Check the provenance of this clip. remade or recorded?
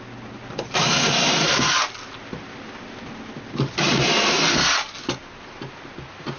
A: recorded